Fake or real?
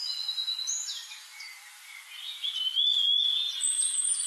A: real